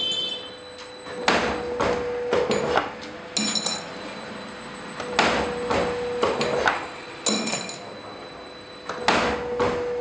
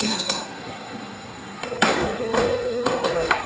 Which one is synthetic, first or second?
second